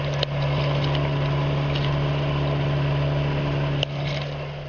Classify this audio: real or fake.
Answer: real